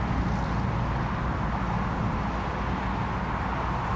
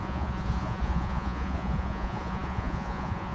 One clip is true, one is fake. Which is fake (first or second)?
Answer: second